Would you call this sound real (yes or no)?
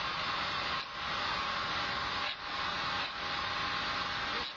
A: yes